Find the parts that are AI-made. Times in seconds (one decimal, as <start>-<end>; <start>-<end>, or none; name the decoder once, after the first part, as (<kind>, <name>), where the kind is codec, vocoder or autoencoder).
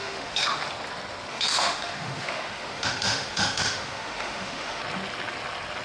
0.0-0.6 (autoencoder, DAC-VAE); 1.3-4.8